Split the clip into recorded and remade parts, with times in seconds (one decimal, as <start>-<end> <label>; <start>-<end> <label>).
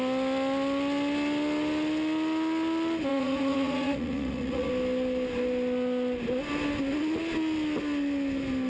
0.0-3.1 recorded; 3.1-4.7 remade; 4.7-8.7 recorded